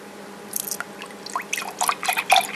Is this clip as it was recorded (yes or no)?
yes